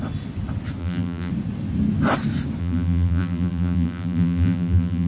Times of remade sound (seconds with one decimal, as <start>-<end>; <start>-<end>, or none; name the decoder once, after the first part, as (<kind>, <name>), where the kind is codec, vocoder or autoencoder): 0.8-1.3 (vocoder, BigVGAN v2); 2.6-5.1